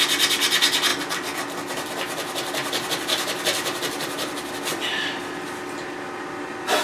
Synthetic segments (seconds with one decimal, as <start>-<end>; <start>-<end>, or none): none